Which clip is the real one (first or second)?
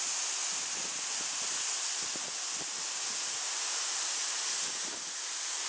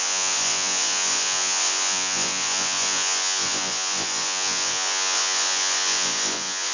first